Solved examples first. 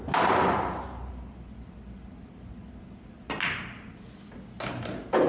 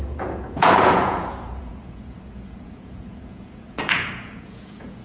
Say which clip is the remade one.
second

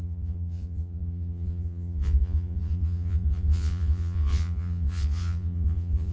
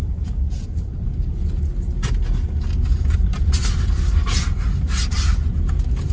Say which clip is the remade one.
first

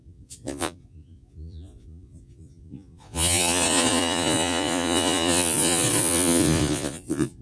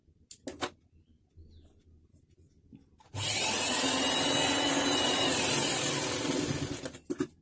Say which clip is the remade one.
first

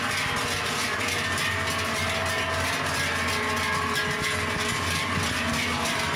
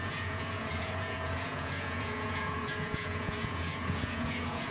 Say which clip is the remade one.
second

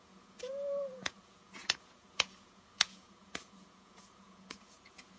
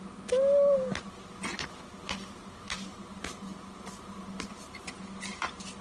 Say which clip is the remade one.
first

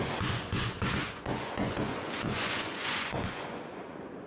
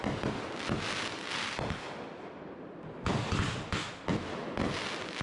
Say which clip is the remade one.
first